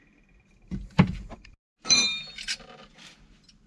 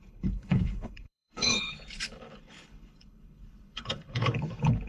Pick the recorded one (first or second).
first